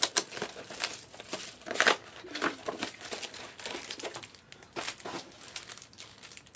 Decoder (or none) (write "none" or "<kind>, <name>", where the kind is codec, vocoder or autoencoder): none